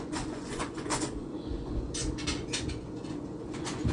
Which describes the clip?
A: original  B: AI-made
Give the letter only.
B